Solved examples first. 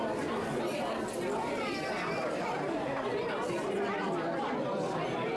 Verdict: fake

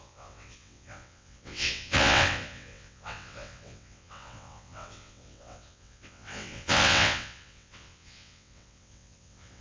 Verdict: fake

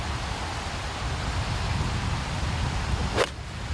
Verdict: real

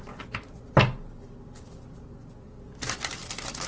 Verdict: real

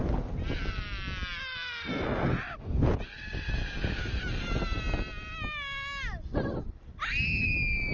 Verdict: real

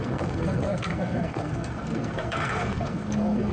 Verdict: fake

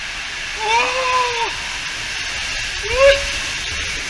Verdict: real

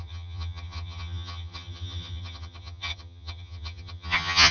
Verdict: fake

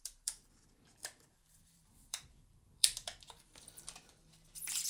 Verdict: fake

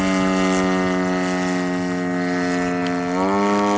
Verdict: real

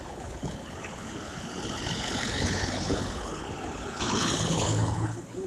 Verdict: fake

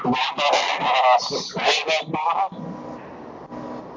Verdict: real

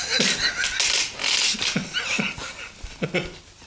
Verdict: real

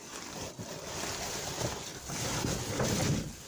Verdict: fake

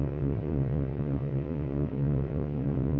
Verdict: fake